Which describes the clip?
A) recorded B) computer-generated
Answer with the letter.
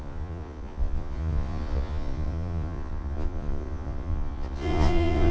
B